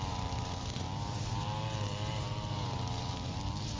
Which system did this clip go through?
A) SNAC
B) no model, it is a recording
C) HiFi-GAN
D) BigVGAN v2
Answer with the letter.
D